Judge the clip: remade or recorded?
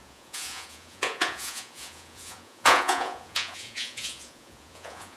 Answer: remade